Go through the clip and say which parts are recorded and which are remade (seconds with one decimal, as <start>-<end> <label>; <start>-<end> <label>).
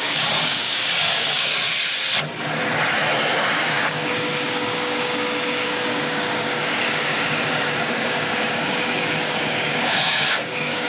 0.0-1.5 remade; 1.5-3.5 recorded; 3.5-10.9 remade